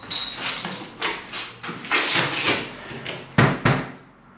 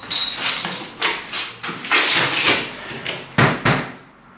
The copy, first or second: second